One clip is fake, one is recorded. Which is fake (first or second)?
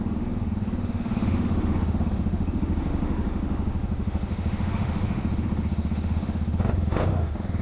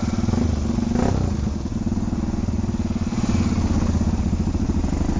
first